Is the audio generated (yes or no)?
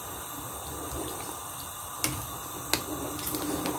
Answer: no